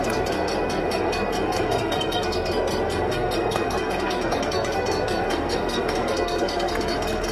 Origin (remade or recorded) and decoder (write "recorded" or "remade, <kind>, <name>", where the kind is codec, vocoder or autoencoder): remade, codec, SNAC